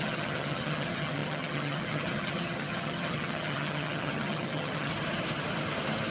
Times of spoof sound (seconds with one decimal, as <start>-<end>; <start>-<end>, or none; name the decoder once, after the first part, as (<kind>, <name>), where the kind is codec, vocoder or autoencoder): 0.0-4.9 (vocoder, HiFi-GAN)